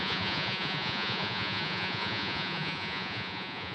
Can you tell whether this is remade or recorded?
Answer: remade